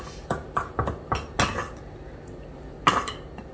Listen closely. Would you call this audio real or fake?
real